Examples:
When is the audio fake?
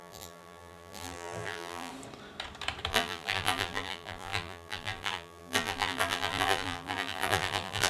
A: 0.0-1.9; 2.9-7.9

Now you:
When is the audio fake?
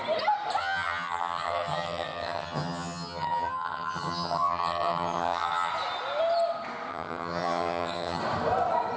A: 0.6-5.7; 6.9-8.2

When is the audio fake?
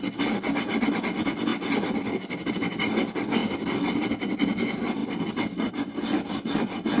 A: 5.0-5.7